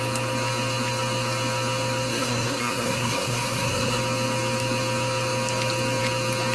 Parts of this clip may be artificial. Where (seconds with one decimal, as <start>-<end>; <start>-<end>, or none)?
2.1-4.0